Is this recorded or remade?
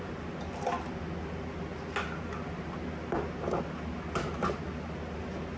recorded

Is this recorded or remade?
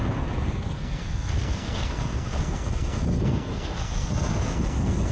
remade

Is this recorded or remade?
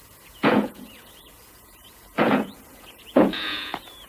remade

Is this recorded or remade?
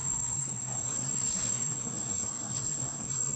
remade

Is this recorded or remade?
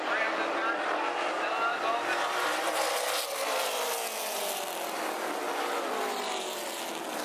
recorded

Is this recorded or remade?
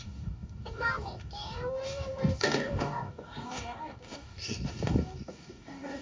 remade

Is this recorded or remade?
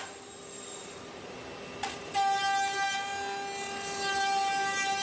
recorded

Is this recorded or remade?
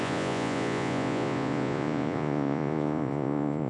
remade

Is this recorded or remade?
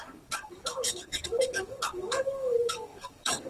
remade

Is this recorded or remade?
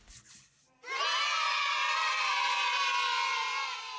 recorded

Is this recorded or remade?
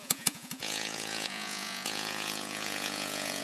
remade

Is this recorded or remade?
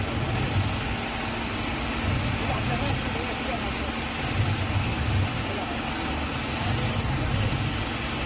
recorded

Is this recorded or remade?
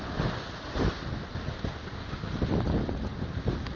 recorded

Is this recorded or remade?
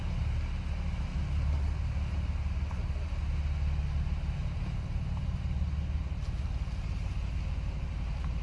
recorded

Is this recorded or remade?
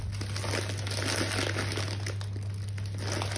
recorded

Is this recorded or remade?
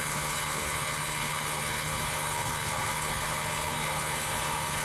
remade